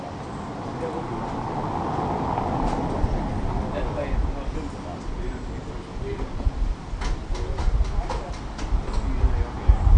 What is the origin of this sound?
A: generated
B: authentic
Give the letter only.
B